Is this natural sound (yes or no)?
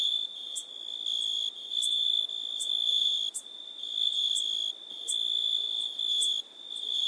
yes